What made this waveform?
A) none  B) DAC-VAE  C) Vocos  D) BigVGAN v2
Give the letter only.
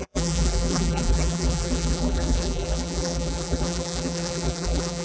D